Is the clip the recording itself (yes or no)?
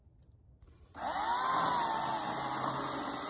yes